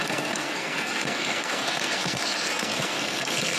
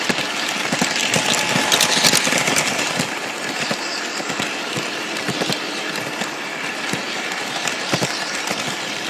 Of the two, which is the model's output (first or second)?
first